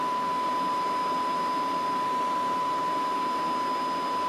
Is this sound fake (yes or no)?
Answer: no